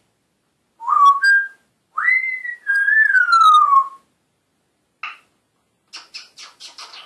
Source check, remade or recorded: recorded